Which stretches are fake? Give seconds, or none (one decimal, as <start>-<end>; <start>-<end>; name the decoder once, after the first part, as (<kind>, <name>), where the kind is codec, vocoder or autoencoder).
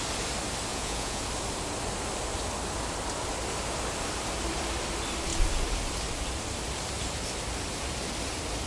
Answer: 0.7-1.2 (vocoder, Vocos)